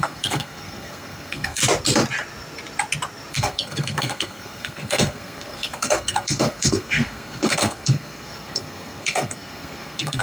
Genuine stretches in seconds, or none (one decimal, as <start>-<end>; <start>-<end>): 1.6-3.3